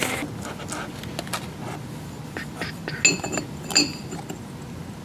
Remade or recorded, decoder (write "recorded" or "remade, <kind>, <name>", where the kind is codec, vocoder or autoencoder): recorded